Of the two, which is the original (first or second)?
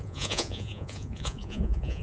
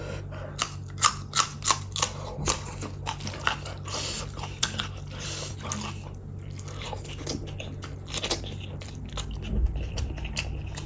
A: second